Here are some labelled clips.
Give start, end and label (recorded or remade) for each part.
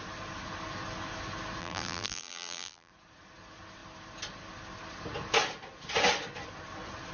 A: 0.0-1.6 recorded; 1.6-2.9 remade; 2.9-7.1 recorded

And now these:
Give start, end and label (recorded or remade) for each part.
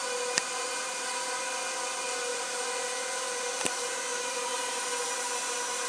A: 0.0-1.4 remade; 1.4-2.3 recorded; 2.3-5.9 remade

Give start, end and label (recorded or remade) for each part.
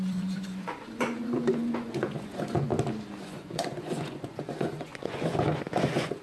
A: 0.0-2.7 remade; 2.7-3.2 recorded; 3.2-6.2 remade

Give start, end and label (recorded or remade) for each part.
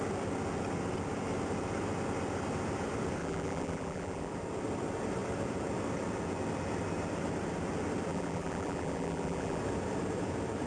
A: 0.0-3.2 recorded; 3.2-4.3 remade; 4.3-8.1 recorded; 8.1-9.6 remade; 9.6-10.7 recorded